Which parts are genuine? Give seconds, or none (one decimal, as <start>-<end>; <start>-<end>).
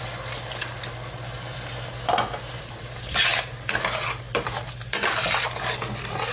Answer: 0.0-6.3